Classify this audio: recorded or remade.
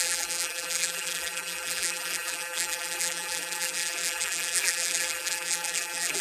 remade